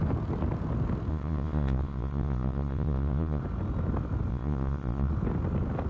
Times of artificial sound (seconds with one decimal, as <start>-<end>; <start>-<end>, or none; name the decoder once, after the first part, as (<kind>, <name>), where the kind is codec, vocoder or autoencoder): 1.1-3.4 (vocoder, Vocos); 4.3-5.1